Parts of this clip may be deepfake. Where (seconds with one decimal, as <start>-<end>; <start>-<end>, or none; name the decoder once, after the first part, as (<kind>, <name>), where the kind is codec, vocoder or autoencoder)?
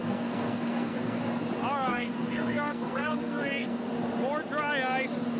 0.0-1.2 (codec, SNAC); 1.9-3.9